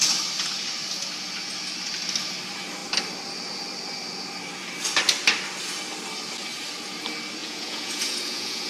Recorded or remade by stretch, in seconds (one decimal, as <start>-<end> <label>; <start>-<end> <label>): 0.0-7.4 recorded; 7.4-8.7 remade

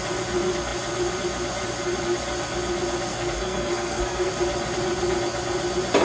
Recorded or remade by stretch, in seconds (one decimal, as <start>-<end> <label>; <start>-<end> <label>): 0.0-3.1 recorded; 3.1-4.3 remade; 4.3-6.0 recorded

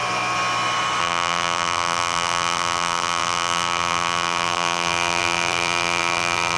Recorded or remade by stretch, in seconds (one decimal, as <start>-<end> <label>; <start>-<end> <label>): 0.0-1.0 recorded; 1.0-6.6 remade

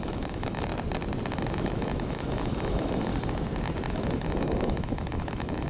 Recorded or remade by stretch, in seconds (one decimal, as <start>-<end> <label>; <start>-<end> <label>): 0.0-0.7 remade; 0.7-1.5 recorded; 1.5-3.1 remade; 3.1-3.9 recorded; 3.9-5.7 remade

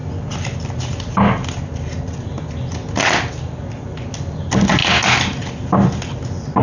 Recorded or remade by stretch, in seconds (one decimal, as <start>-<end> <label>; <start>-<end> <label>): 0.0-6.6 recorded